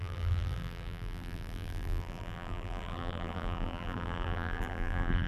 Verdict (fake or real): fake